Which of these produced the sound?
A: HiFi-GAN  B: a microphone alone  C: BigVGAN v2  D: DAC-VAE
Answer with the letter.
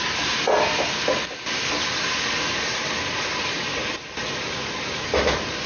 B